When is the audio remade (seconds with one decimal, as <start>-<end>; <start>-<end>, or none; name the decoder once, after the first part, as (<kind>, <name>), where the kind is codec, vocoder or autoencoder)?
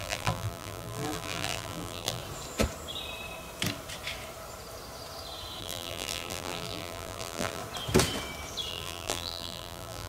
0.0-2.2 (vocoder, BigVGAN v2); 5.6-7.6; 8.7-10.1